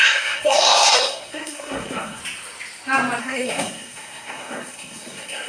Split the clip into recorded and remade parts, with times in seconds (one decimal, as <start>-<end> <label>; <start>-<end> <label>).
0.0-2.2 remade; 2.2-3.2 recorded; 3.2-5.5 remade